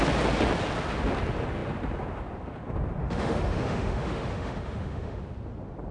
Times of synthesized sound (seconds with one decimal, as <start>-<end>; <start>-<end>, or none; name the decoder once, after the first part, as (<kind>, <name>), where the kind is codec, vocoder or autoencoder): 3.0-5.2 (autoencoder, DAC-VAE)